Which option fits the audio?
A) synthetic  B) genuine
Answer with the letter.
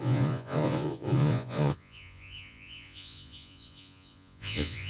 A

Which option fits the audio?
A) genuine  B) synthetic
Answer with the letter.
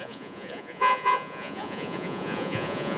B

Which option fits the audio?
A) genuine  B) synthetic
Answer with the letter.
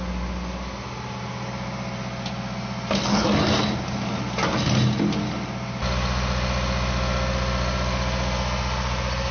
A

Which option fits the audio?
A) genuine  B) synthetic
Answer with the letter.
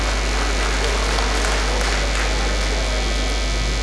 A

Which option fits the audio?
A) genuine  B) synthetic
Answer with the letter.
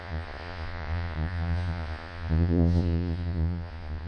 B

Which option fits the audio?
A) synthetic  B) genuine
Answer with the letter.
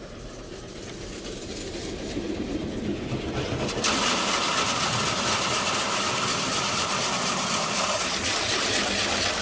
B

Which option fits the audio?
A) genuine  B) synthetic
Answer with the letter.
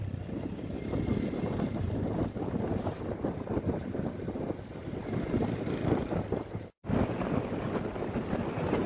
A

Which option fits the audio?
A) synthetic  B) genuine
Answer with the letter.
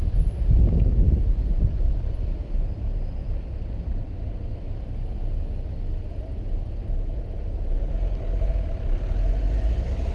B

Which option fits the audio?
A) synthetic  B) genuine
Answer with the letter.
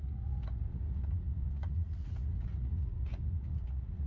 A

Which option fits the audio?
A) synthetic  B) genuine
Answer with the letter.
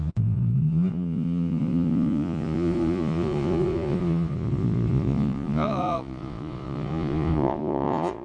A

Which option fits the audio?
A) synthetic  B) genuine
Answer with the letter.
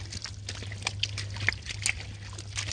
B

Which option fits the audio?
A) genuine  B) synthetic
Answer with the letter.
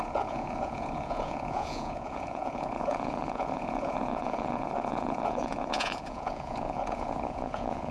B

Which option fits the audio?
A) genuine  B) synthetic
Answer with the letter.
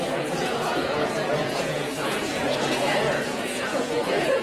B